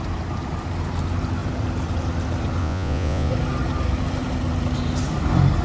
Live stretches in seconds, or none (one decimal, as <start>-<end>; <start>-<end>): 0.0-2.6; 3.3-5.6